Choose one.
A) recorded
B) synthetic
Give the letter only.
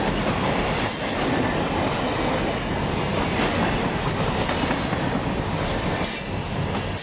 A